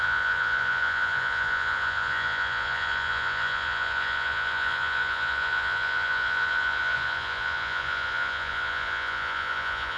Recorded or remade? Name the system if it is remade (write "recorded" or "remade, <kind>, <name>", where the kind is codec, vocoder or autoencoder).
remade, vocoder, Vocos